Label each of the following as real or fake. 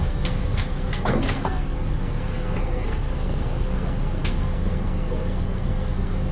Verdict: fake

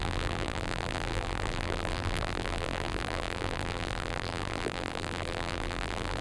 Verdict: fake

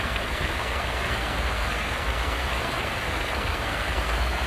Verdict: fake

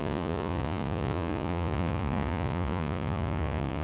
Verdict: fake